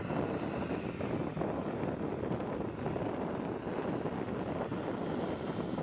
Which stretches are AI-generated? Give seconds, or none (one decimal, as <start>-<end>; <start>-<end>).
none